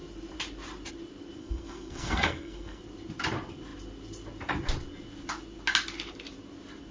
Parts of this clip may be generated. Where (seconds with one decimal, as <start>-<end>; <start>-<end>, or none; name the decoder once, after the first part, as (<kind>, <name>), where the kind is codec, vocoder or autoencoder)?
1.4-2.8 (codec, SNAC)